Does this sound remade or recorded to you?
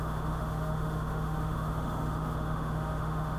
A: remade